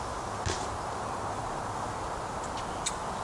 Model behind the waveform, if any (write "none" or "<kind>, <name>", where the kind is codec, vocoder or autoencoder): none